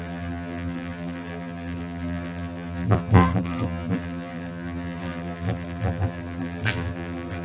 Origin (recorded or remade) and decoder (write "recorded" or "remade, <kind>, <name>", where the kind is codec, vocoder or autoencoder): remade, vocoder, BigVGAN v2